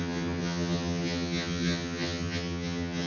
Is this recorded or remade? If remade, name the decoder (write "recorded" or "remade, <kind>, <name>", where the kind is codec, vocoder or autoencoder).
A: remade, vocoder, HiFi-GAN